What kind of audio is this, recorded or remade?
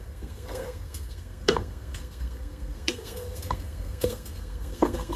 remade